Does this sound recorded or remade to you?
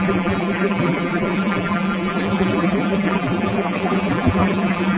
remade